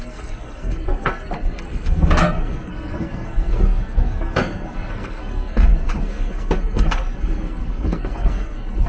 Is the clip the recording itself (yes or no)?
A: no